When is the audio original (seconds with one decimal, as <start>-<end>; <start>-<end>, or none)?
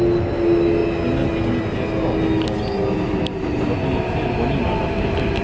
0.0-5.4